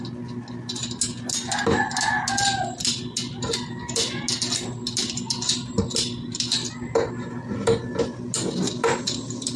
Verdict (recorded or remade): recorded